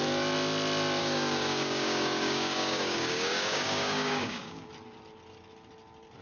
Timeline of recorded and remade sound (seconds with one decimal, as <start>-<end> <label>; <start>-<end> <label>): 0.0-1.0 recorded; 1.0-4.7 remade; 4.7-6.2 recorded